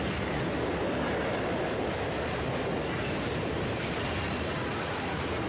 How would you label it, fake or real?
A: real